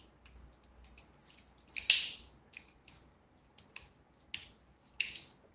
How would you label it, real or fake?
real